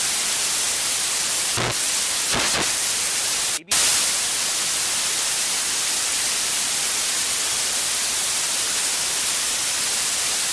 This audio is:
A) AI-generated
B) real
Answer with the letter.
B